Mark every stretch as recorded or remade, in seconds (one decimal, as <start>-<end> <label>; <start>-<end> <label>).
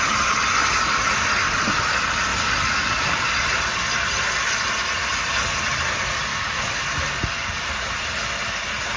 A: 0.0-1.4 recorded; 1.4-1.9 remade; 1.9-2.3 recorded; 2.3-3.2 remade; 3.2-6.3 recorded; 6.3-6.8 remade; 6.8-7.2 recorded; 7.2-8.1 remade; 8.1-9.0 recorded